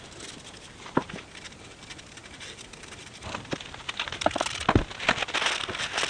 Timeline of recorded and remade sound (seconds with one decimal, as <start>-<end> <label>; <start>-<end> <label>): 0.0-6.1 recorded